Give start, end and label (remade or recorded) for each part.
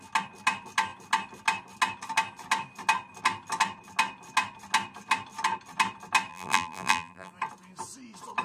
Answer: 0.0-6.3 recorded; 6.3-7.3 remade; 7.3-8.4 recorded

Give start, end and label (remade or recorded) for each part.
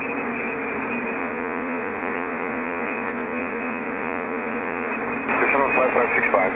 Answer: 0.0-1.2 recorded; 1.2-4.9 remade; 4.9-6.6 recorded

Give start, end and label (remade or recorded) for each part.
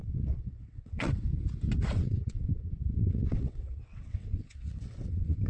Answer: 0.0-1.3 remade; 1.3-1.9 recorded; 1.9-5.5 remade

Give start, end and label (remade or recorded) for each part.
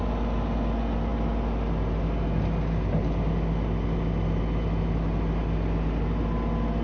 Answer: 0.0-6.8 recorded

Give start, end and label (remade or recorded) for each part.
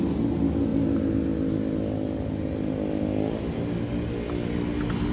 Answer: 0.0-5.1 recorded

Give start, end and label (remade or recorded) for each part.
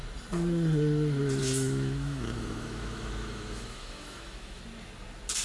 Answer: 0.0-1.4 recorded; 1.4-4.6 remade; 4.6-5.4 recorded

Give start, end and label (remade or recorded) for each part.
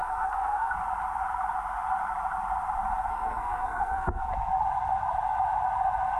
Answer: 0.0-0.7 remade; 0.7-3.1 recorded; 3.1-4.2 remade; 4.2-6.2 recorded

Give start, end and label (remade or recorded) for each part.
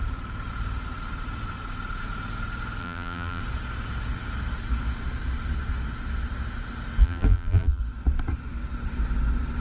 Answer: 0.0-2.8 recorded; 2.8-3.4 remade; 3.4-7.0 recorded; 7.0-7.8 remade; 7.8-9.6 recorded